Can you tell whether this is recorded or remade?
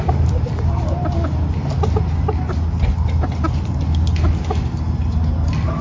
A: recorded